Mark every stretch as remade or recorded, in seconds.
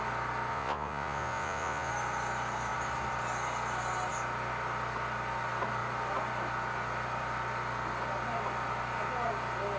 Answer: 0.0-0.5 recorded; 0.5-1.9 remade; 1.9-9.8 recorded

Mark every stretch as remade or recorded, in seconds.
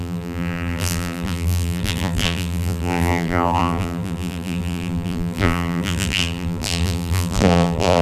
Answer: 0.0-8.0 remade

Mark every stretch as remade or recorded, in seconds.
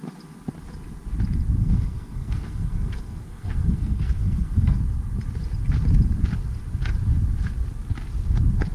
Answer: 0.0-1.6 recorded; 1.6-4.8 remade; 4.8-8.7 recorded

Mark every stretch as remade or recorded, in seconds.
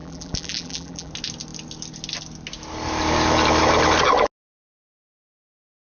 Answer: 0.0-1.1 remade; 1.1-6.0 recorded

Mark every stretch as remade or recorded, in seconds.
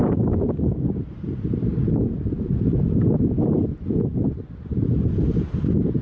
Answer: 0.0-1.0 remade; 1.0-6.0 recorded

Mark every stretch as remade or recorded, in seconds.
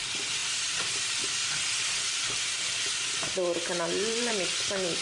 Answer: 0.0-0.4 recorded; 0.4-1.2 remade; 1.2-3.3 recorded; 3.3-4.3 remade; 4.3-5.0 recorded